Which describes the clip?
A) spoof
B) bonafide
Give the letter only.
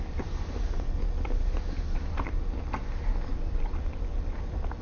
B